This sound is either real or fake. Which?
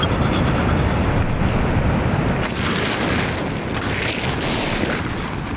real